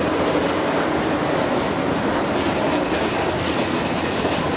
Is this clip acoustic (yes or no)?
yes